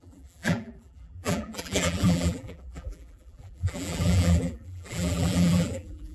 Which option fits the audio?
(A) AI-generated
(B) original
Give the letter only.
A